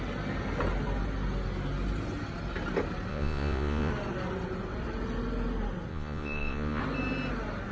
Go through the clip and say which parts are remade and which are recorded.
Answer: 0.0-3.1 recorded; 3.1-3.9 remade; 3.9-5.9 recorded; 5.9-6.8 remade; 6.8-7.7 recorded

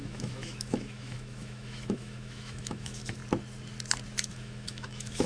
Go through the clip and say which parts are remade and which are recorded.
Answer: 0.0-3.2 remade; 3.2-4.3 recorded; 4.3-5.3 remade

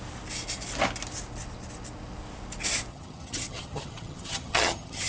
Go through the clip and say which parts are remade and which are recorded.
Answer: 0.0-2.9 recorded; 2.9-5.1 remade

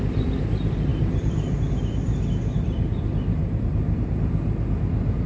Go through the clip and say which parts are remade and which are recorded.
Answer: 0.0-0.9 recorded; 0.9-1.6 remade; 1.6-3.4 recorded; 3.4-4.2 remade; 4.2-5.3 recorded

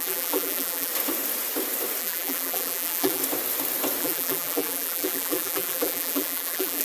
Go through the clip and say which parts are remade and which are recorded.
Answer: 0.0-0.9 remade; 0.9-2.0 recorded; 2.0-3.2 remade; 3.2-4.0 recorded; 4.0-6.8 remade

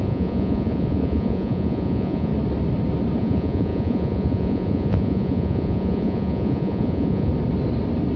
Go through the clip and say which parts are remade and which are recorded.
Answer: 0.0-2.3 remade; 2.3-3.2 recorded; 3.2-7.3 remade; 7.3-8.2 recorded

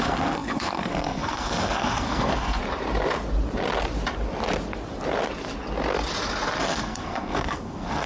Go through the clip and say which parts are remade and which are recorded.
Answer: 0.0-2.6 remade; 2.6-6.6 recorded; 6.6-8.1 remade

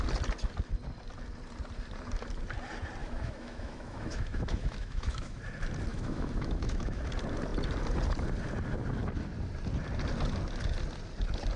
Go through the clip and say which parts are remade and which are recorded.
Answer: 0.0-3.0 recorded; 3.0-5.4 remade; 5.4-5.9 recorded; 5.9-7.0 remade; 7.0-11.6 recorded